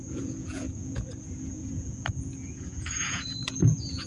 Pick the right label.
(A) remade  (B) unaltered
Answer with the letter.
A